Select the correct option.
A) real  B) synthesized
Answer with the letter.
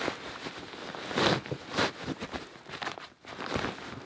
A